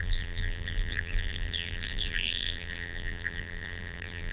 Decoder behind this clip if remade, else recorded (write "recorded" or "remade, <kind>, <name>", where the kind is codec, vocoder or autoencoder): remade, vocoder, BigVGAN v2